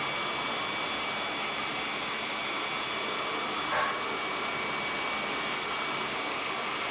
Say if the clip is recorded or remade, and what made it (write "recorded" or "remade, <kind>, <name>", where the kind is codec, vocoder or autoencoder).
recorded